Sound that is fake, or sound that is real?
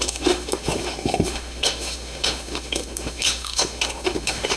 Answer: fake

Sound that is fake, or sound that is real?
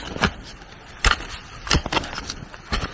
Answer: real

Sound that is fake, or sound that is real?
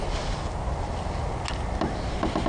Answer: real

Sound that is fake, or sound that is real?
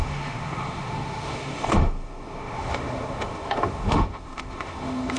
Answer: fake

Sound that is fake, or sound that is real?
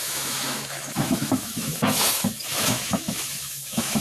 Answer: fake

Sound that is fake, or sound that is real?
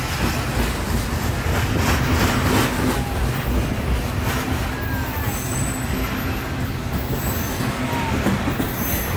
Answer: real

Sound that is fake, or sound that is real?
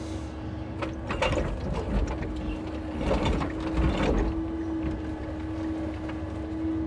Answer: real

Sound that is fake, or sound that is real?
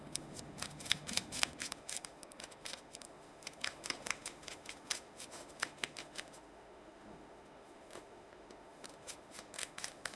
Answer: fake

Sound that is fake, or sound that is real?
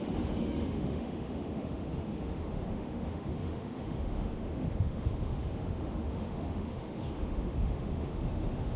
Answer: fake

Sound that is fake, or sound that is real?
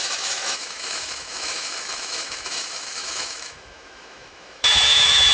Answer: fake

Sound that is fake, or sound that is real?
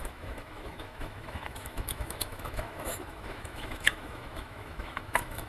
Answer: fake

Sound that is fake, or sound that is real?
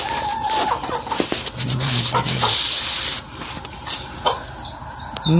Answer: real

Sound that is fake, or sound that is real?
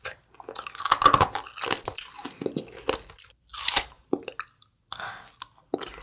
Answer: real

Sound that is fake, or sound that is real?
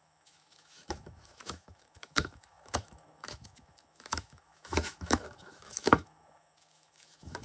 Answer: fake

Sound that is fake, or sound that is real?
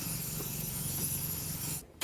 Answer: fake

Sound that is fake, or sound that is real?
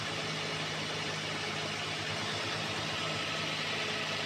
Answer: real